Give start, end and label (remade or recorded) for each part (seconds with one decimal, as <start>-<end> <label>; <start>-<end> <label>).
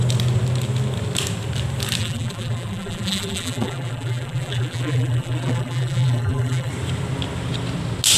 0.0-2.0 recorded; 2.0-6.7 remade; 6.7-8.2 recorded